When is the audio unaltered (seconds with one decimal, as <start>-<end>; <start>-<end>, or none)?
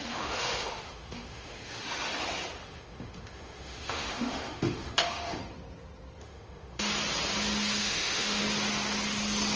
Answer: 2.1-2.6; 5.4-6.2; 6.9-7.8; 8.4-9.6